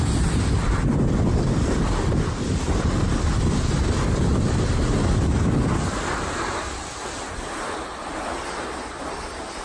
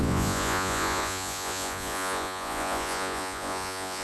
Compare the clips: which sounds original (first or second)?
first